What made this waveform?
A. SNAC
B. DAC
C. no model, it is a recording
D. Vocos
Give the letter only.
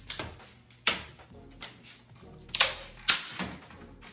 C